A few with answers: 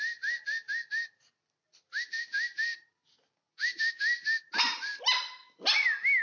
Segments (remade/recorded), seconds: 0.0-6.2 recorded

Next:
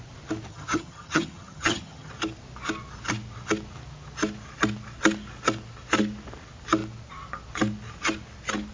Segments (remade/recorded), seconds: 0.0-0.5 recorded; 0.5-2.1 remade; 2.1-8.7 recorded